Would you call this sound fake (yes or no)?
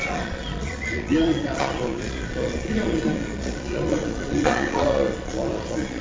yes